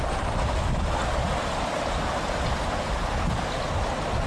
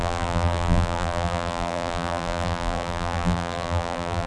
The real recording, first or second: first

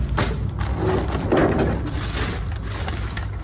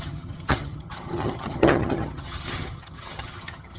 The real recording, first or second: first